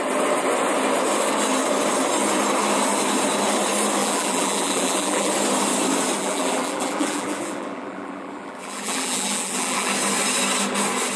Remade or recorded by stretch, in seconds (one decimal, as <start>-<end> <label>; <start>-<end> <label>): 0.0-4.0 recorded; 4.0-5.3 remade; 5.3-6.2 recorded; 6.2-9.9 remade; 9.9-11.2 recorded